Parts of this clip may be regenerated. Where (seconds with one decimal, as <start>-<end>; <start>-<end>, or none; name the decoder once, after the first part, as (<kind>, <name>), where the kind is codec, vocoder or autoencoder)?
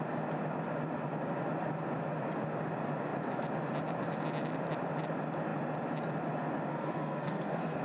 6.7-7.8 (codec, SNAC)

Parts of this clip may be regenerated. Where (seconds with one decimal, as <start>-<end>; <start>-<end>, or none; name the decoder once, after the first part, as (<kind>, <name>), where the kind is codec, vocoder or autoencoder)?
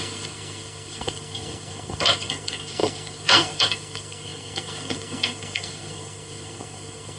0.0-7.2 (codec, SNAC)